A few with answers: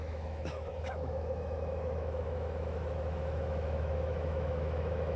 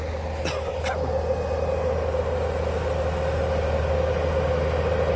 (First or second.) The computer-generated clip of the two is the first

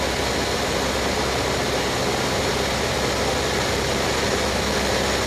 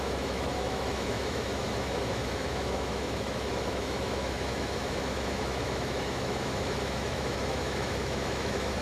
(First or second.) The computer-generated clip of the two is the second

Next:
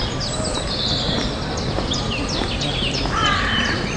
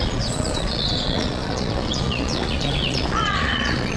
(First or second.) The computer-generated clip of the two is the second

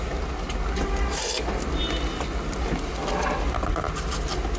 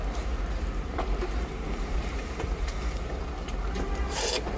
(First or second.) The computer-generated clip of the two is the second